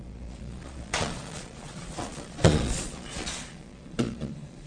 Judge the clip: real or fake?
fake